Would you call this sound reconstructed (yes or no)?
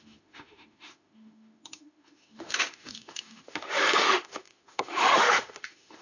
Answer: yes